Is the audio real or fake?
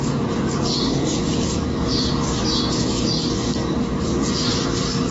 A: real